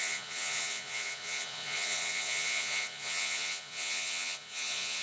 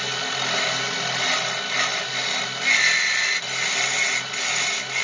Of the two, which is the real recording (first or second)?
second